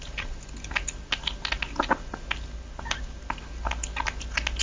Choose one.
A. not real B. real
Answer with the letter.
B